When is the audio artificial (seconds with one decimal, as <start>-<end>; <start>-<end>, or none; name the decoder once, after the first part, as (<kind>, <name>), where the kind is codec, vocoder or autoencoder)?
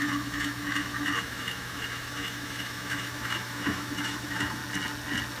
0.0-4.6 (autoencoder, DAC-VAE)